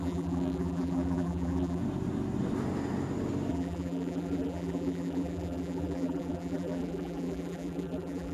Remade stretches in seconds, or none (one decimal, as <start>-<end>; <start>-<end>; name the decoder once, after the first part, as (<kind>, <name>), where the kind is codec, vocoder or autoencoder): 0.0-1.8 (vocoder, BigVGAN v2); 3.5-8.3